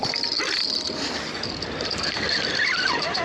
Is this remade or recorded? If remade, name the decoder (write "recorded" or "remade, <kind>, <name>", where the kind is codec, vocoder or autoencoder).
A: recorded